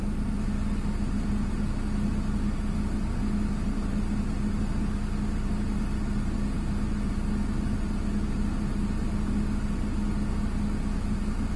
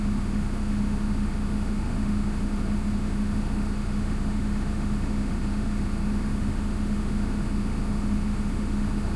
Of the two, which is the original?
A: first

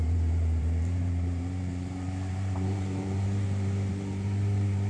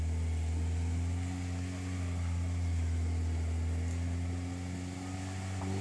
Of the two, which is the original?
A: second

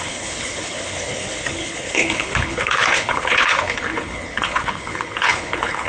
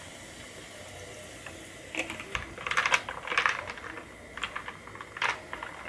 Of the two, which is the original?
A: second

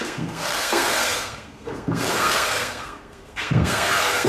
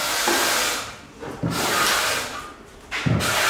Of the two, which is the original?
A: second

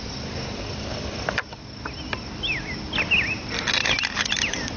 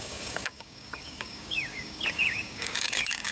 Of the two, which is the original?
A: first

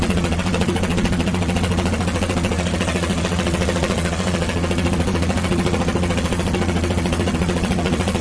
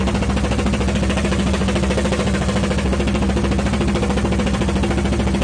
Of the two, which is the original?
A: second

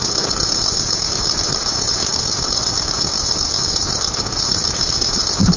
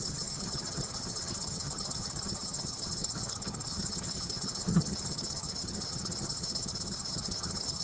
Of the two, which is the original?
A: first